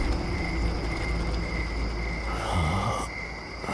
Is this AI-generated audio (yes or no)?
no